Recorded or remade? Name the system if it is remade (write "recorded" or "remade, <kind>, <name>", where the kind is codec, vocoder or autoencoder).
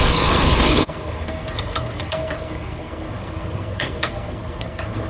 remade, codec, SNAC